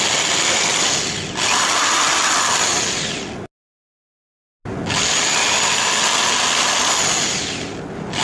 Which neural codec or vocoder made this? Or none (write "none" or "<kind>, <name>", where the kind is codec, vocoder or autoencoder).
none